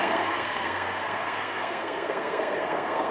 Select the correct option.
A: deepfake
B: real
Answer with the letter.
A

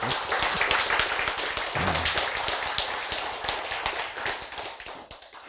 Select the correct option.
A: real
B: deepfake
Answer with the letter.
A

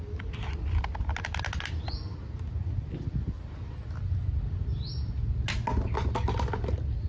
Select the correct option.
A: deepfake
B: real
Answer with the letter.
B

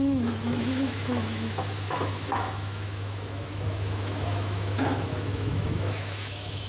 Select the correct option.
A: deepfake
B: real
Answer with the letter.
A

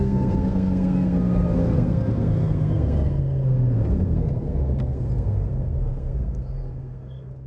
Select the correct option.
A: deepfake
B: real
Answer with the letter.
A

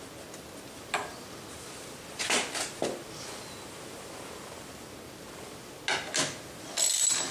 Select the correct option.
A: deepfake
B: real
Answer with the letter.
B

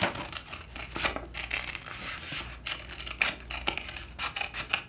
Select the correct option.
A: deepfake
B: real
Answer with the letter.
B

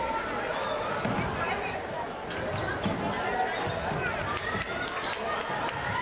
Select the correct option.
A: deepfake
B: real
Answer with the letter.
B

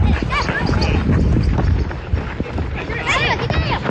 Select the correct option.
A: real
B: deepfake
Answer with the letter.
A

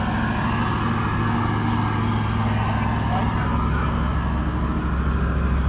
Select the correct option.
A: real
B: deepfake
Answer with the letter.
A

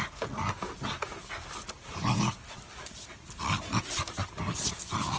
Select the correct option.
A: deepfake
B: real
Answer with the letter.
B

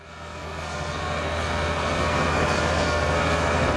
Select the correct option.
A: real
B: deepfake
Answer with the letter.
B